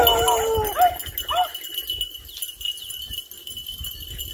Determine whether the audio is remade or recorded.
recorded